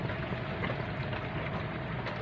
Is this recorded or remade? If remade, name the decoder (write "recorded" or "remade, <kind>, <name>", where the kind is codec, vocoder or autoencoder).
recorded